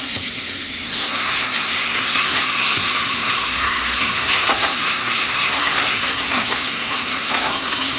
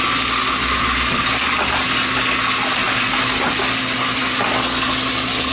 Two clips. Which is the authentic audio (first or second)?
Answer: second